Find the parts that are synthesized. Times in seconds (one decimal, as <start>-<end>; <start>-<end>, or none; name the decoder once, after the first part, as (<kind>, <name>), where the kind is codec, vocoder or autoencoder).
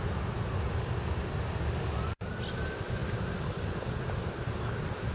none